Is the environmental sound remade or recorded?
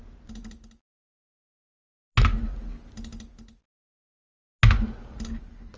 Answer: recorded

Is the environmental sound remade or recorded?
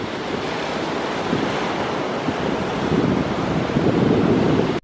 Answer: recorded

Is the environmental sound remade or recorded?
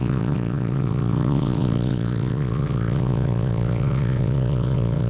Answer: remade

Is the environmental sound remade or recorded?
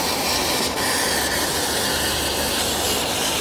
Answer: recorded